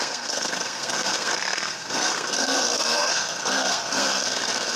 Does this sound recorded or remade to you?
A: remade